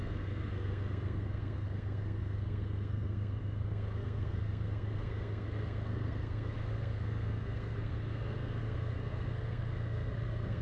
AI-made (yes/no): yes